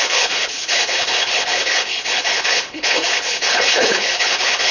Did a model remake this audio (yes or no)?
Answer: yes